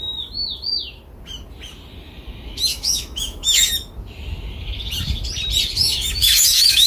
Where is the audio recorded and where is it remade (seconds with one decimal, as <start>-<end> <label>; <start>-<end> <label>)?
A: 0.0-2.7 recorded; 2.7-3.7 remade; 3.7-5.8 recorded; 5.8-6.9 remade